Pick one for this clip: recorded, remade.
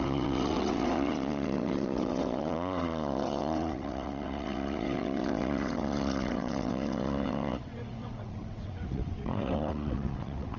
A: remade